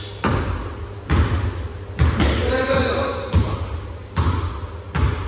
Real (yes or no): yes